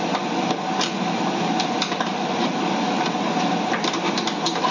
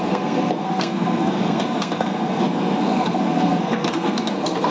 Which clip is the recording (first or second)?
first